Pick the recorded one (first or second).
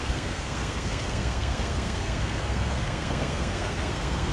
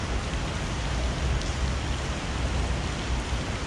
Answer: second